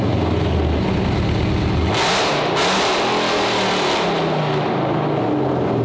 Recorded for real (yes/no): yes